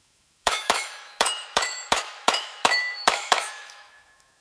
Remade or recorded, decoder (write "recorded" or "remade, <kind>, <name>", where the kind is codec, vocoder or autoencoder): remade, autoencoder, DAC-VAE